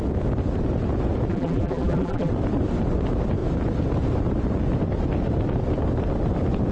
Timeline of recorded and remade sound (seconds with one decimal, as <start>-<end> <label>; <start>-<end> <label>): 0.0-1.3 recorded; 1.3-2.3 remade; 2.3-6.7 recorded